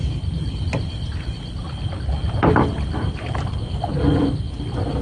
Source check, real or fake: real